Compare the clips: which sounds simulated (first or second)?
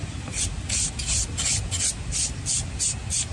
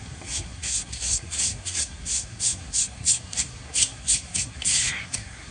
second